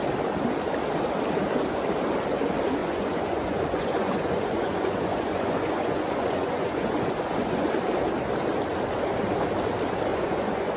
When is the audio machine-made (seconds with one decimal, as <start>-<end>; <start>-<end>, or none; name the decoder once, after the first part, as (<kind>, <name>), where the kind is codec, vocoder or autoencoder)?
2.8-7.7 (vocoder, Vocos); 10.1-10.8